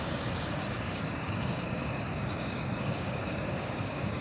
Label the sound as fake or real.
fake